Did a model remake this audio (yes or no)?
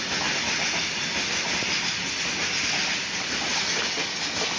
no